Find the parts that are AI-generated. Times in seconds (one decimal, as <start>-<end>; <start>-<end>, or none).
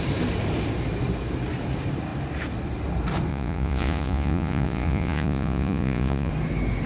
3.3-6.3